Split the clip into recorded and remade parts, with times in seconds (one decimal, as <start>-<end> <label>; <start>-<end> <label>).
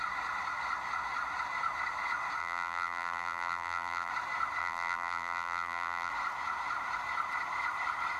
0.0-2.4 recorded; 2.4-4.1 remade; 4.1-4.6 recorded; 4.6-6.1 remade; 6.1-8.2 recorded